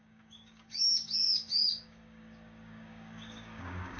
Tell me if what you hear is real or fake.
fake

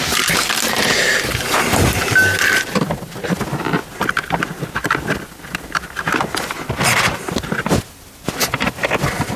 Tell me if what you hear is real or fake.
real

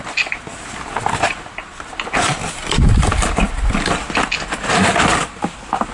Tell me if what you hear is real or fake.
real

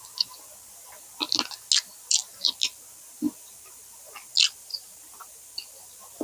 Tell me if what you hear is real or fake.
real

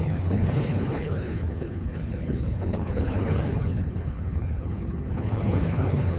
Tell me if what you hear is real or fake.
fake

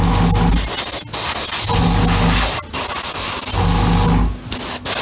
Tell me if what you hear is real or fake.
real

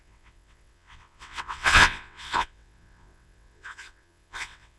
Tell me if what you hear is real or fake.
fake